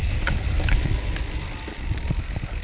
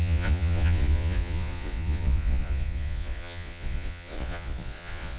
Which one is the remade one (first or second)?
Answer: second